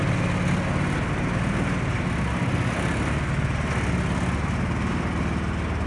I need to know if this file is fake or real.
real